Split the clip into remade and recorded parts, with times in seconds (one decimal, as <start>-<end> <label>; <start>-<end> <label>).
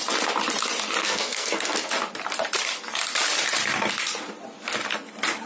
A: 0.0-1.0 recorded; 1.0-1.9 remade; 1.9-5.5 recorded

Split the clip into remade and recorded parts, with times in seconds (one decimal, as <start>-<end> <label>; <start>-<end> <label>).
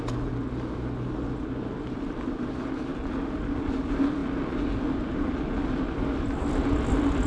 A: 0.0-7.3 recorded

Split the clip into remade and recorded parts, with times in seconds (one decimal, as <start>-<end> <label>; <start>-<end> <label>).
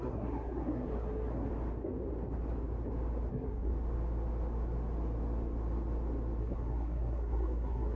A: 0.0-1.5 remade; 1.5-3.3 recorded; 3.3-3.7 remade; 3.7-6.4 recorded; 6.4-8.0 remade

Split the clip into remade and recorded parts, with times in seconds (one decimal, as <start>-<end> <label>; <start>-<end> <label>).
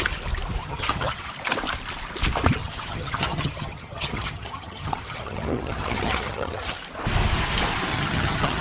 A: 0.0-0.6 recorded; 0.6-1.3 remade; 1.3-2.6 recorded; 2.6-6.7 remade; 6.7-7.9 recorded; 7.9-8.6 remade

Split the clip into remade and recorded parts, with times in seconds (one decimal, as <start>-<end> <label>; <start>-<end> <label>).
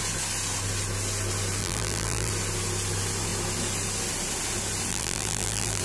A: 0.0-1.6 recorded; 1.6-2.3 remade; 2.3-4.9 recorded; 4.9-5.8 remade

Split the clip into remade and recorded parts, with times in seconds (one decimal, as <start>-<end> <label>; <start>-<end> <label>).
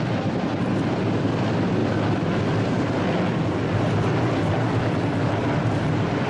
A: 0.0-6.3 recorded